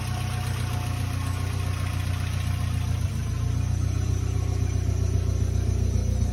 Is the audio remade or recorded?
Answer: recorded